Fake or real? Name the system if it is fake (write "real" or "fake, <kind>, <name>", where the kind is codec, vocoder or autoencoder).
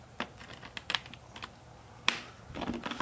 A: real